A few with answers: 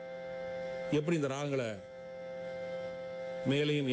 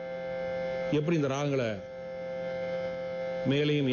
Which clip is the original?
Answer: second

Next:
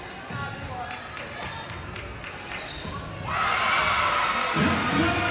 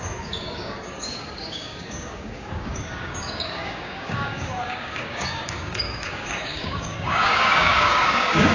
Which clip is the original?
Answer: first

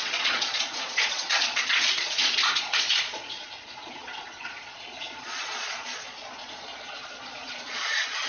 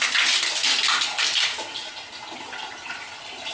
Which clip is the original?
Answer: second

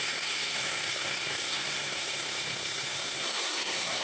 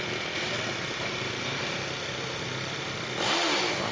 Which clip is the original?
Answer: second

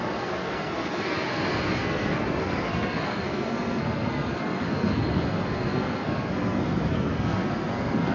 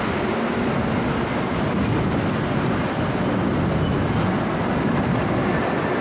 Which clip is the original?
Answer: second